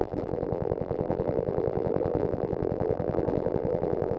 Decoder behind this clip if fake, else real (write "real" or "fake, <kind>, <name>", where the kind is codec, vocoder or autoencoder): fake, vocoder, BigVGAN v2